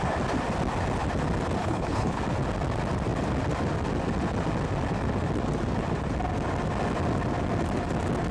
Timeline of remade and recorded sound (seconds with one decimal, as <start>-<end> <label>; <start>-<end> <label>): 0.0-1.6 recorded; 1.6-2.2 remade; 2.2-8.3 recorded